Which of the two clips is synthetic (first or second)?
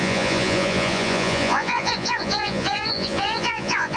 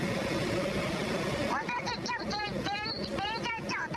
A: first